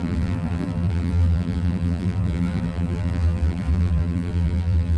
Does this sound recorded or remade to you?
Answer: remade